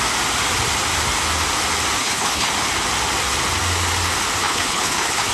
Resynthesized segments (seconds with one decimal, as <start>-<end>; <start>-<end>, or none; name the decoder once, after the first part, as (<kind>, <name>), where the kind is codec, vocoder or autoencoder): 2.0-2.5 (codec, HILCodec); 4.4-5.3